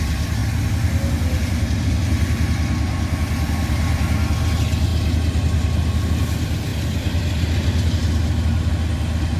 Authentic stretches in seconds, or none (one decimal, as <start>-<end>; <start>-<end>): 0.0-9.4